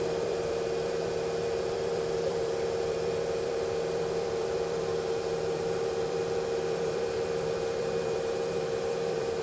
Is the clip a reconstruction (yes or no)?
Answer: yes